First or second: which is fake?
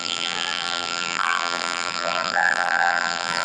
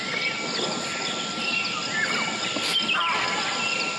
first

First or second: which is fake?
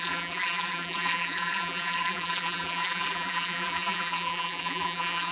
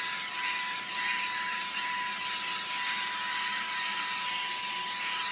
first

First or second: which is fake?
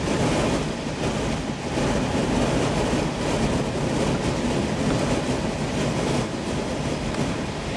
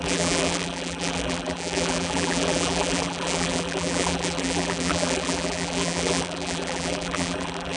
second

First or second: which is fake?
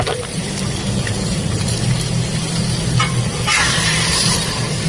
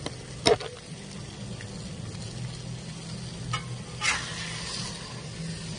first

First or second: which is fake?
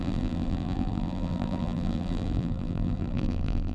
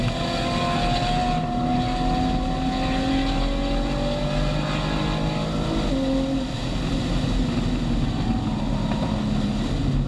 first